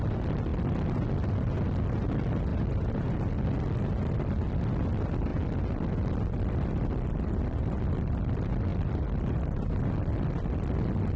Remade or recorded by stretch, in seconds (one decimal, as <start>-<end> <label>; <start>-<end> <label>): 0.0-2.5 recorded; 2.5-3.1 remade; 3.1-8.7 recorded; 8.7-9.8 remade; 9.8-11.2 recorded